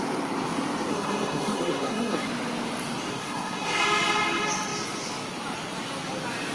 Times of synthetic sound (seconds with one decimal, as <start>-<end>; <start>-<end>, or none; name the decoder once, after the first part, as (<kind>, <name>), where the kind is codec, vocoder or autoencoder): 0.9-2.3 (codec, SNAC); 3.1-3.8